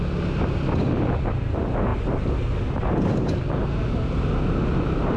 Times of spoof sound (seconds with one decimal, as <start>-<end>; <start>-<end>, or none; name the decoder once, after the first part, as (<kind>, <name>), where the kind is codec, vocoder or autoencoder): none

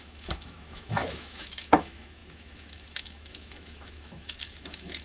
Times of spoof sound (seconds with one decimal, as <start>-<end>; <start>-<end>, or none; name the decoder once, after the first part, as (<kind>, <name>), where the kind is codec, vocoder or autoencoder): 0.0-5.0 (autoencoder, DAC-VAE)